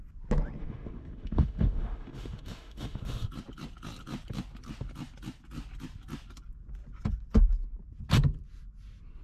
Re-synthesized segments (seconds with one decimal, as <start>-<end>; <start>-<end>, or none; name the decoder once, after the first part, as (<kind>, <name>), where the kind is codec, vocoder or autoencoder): 0.6-3.3 (autoencoder, DAC-VAE)